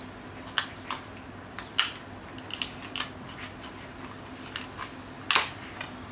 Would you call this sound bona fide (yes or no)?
yes